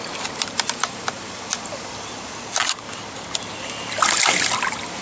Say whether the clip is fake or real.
fake